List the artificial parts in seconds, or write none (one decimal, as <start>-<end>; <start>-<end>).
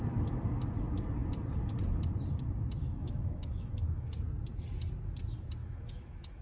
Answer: 2.8-4.2; 5.6-6.4